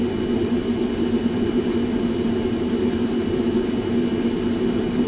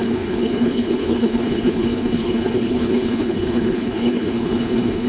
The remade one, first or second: second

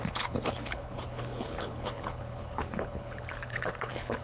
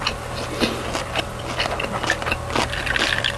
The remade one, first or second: first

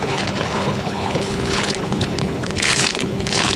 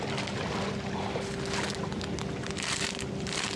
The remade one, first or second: first